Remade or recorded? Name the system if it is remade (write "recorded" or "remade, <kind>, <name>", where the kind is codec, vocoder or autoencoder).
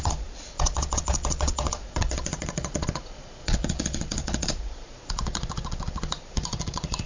remade, vocoder, Vocos